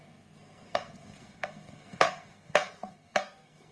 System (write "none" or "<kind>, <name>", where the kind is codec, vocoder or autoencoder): codec, SNAC